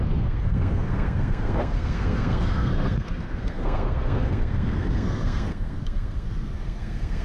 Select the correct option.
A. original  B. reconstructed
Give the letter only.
B